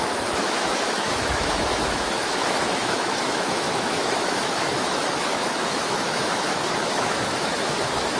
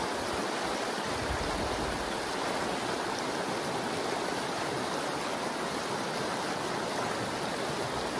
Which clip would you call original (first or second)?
second